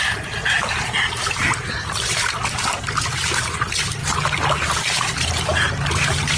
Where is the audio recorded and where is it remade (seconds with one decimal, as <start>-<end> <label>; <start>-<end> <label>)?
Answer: 0.0-6.4 recorded